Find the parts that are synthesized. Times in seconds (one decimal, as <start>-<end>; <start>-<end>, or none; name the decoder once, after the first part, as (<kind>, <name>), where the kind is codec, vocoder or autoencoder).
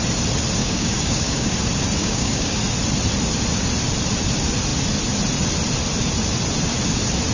0.6-1.5 (codec, DAC); 2.0-2.6